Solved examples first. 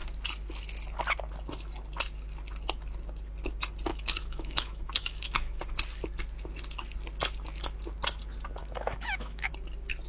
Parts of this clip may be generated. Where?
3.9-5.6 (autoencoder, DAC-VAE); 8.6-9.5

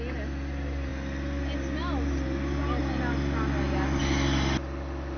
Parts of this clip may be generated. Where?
none